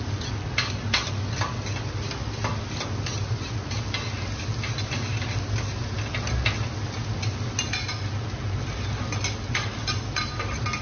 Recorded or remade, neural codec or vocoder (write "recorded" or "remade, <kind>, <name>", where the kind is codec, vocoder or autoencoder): recorded